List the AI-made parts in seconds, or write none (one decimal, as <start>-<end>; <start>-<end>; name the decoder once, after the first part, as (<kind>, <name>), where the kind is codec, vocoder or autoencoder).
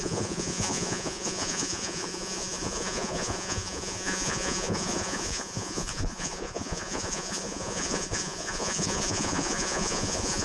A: 0.0-10.4 (vocoder, Vocos)